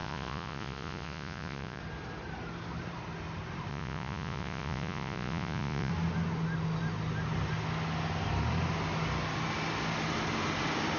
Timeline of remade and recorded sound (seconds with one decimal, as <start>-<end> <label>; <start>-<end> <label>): 0.0-1.8 remade; 1.8-3.7 recorded; 3.7-5.9 remade; 5.9-11.0 recorded